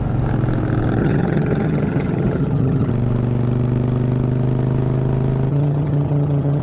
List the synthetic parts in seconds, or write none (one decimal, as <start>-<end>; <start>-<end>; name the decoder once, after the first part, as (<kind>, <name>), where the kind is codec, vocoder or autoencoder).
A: 1.0-2.9 (vocoder, HiFi-GAN); 5.5-6.6